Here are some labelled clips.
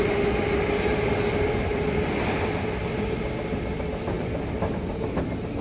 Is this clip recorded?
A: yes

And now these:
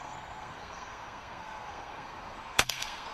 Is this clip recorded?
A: no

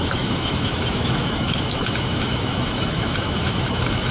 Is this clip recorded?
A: no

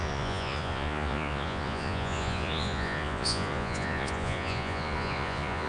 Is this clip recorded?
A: no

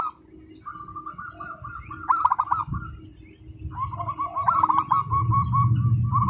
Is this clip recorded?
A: yes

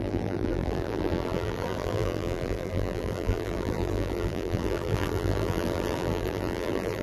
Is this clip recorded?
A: no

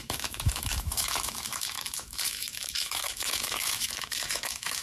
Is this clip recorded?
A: no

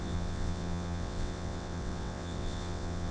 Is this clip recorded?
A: no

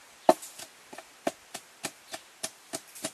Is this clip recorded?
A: yes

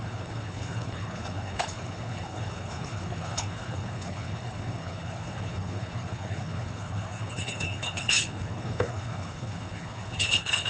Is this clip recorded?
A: no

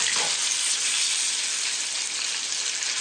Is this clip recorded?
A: yes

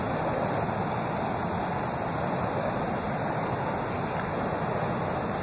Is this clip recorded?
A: yes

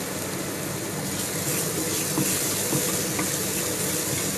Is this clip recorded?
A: yes